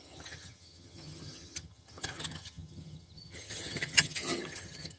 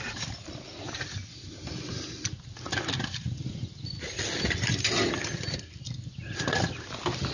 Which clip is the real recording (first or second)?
second